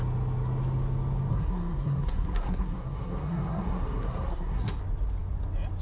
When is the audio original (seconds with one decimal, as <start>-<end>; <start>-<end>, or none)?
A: 0.0-1.3; 4.8-5.8